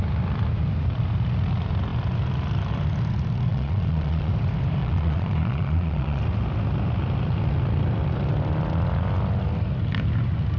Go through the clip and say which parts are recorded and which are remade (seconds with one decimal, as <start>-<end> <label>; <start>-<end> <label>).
0.0-3.5 recorded; 3.5-4.3 remade; 4.3-4.8 recorded; 4.8-6.2 remade; 6.2-10.6 recorded